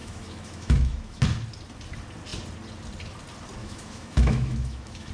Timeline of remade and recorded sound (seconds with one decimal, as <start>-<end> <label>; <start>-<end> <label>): 0.0-1.2 remade; 1.2-3.6 recorded; 3.6-5.1 remade